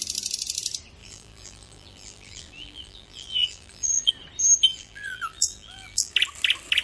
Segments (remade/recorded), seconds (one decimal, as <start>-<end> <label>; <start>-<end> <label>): 0.0-1.0 recorded; 1.0-4.1 remade; 4.1-4.7 recorded; 4.7-6.1 remade; 6.1-6.8 recorded